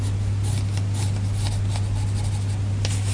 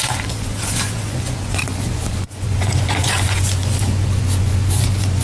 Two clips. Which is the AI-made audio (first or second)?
second